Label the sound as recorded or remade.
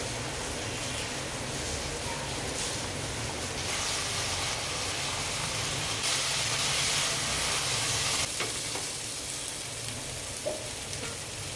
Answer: recorded